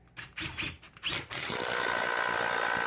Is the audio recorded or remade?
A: recorded